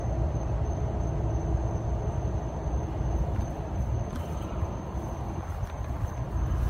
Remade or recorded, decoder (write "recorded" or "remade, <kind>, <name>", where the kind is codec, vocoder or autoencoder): recorded